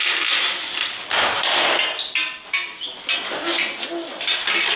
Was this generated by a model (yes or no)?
no